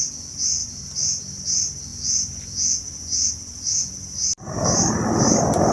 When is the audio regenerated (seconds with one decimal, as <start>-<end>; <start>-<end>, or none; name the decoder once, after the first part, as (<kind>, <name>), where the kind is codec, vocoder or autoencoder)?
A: 0.6-1.2 (vocoder, BigVGAN v2)